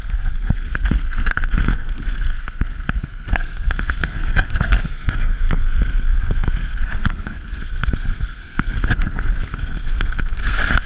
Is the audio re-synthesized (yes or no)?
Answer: yes